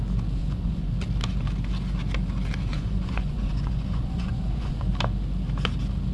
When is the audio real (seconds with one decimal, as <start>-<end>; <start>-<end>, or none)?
0.0-0.4; 0.9-2.7; 4.9-6.1